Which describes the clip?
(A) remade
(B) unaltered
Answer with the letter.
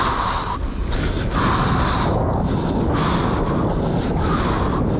B